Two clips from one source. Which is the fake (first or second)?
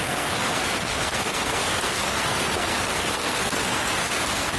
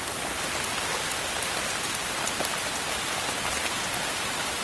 first